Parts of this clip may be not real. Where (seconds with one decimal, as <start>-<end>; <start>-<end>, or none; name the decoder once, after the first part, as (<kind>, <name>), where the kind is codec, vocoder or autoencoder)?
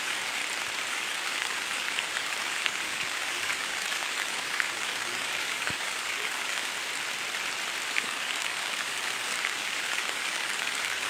0.0-0.4 (codec, DAC); 0.9-6.7; 7.9-11.1